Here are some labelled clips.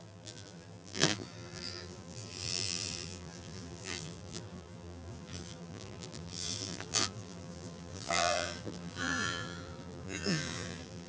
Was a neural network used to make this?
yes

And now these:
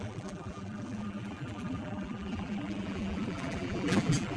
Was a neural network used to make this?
yes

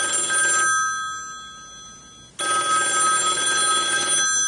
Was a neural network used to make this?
no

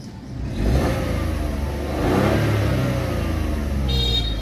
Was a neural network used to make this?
no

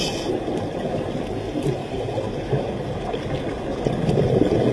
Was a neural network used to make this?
no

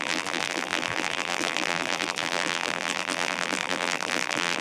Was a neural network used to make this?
yes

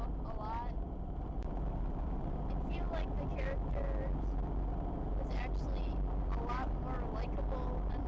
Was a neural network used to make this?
no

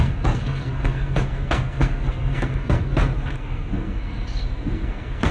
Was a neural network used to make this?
yes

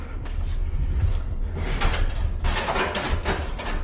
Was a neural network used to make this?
no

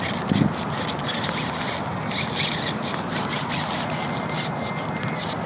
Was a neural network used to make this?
no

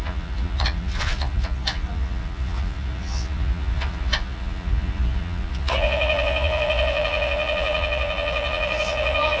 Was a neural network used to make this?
yes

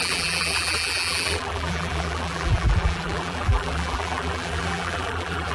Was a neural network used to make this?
yes